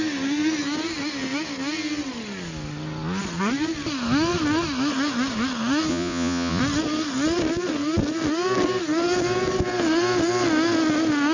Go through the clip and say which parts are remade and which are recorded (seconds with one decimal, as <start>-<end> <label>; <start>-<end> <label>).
0.0-5.9 recorded; 5.9-6.6 remade; 6.6-11.3 recorded